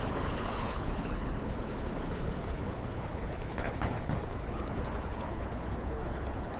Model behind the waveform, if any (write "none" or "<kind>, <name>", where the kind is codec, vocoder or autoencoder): codec, HILCodec